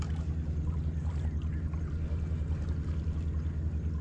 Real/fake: real